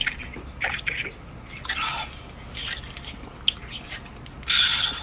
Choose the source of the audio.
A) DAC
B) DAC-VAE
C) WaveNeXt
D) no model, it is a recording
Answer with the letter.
D